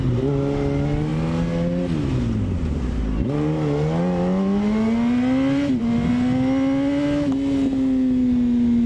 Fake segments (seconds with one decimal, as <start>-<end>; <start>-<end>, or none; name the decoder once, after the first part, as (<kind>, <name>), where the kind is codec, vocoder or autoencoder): none

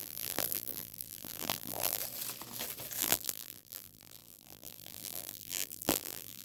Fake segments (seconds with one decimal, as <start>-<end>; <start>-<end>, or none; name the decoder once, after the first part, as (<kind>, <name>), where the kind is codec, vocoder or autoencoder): 0.0-2.0 (vocoder, BigVGAN v2); 3.0-6.4